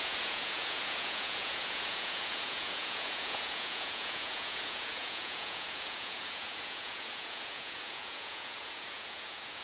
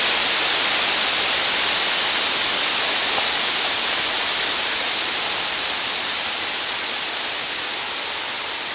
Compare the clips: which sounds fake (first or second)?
first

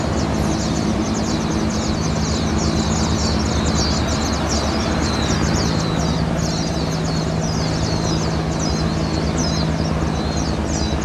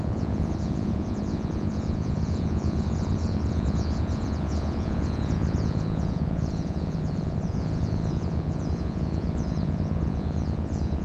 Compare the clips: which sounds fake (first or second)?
second